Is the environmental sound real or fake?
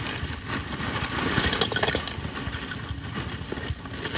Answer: real